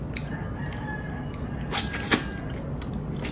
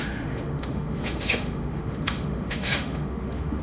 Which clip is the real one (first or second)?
first